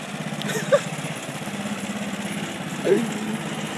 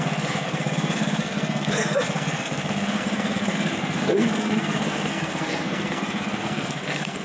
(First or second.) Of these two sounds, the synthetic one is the second